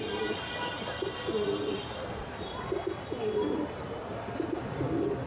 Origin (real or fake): real